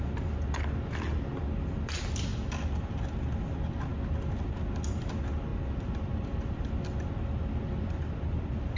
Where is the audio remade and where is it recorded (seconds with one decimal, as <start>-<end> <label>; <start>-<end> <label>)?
0.0-5.5 recorded; 5.5-6.7 remade; 6.7-8.8 recorded